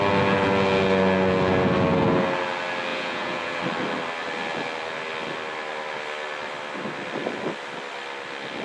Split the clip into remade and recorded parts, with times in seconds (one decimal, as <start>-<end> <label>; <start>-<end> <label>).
0.0-2.9 recorded; 2.9-3.6 remade; 3.6-8.6 recorded